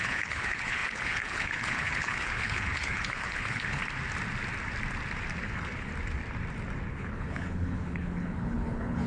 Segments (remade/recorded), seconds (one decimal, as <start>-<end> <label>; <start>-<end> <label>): 0.0-3.8 remade; 3.8-5.4 recorded; 5.4-5.9 remade; 5.9-6.9 recorded; 6.9-9.1 remade